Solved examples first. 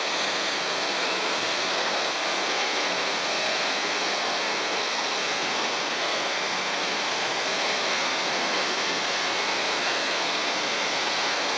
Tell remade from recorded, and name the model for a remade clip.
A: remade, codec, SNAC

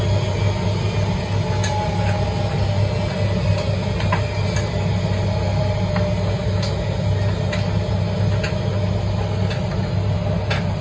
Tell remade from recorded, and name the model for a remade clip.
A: recorded